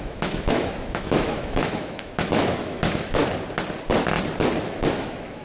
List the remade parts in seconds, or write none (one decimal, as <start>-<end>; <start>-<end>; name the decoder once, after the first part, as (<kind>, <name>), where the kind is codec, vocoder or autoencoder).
0.0-3.2 (autoencoder, DAC-VAE); 4.6-5.4